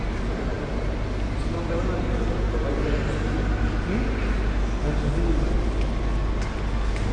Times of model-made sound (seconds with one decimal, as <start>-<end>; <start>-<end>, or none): none